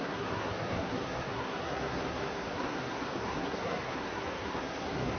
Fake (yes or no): yes